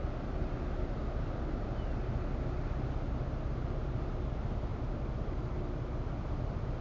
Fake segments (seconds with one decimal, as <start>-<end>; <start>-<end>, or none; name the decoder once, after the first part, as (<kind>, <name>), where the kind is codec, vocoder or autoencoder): 4.7-5.4 (vocoder, BigVGAN v2)